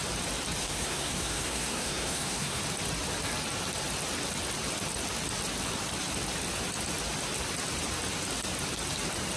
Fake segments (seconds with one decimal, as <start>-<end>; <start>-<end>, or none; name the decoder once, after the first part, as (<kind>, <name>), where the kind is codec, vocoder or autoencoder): 0.6-2.6 (codec, SNAC)